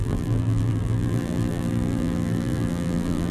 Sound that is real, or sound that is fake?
fake